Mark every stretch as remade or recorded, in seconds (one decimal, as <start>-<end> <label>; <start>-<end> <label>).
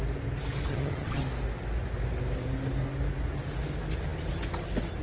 0.0-0.7 recorded; 0.7-1.2 remade; 1.2-5.0 recorded